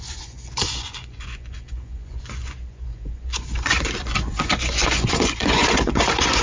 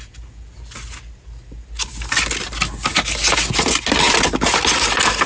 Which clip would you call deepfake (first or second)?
first